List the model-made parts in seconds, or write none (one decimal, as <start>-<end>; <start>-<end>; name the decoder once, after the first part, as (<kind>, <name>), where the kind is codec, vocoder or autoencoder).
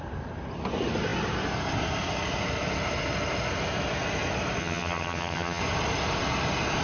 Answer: 4.6-5.6 (vocoder, HiFi-GAN)